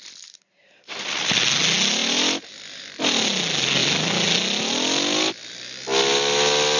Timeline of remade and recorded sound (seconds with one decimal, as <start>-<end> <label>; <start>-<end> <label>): 0.0-6.8 recorded